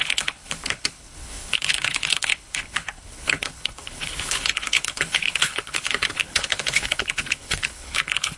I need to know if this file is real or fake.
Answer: fake